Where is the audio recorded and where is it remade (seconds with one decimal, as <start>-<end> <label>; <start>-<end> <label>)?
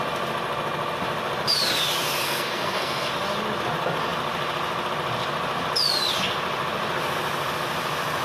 0.0-2.2 recorded; 2.2-3.1 remade; 3.1-8.2 recorded